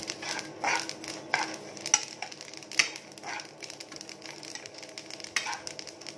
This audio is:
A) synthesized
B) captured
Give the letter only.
B